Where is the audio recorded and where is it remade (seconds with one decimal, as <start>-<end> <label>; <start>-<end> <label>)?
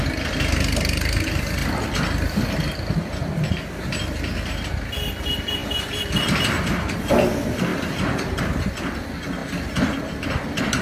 0.0-5.6 recorded; 5.6-7.0 remade; 7.0-7.7 recorded; 7.7-8.4 remade; 8.4-10.8 recorded